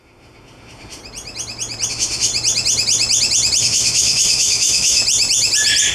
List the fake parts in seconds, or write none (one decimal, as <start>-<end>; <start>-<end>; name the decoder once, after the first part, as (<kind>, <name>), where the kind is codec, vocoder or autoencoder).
0.0-1.0 (autoencoder, DAC-VAE); 1.9-2.3; 3.6-5.0